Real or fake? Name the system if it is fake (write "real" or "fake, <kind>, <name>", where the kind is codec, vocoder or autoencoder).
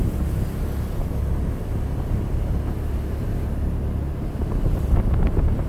real